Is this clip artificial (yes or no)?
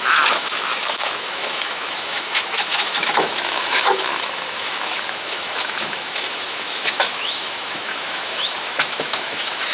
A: yes